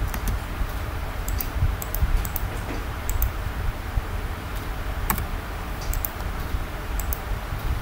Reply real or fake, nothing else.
fake